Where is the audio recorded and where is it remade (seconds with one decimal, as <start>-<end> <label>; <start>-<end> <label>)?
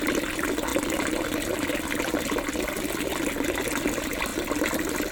0.0-4.3 recorded; 4.3-5.1 remade